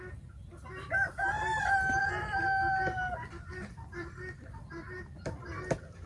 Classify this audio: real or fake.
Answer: real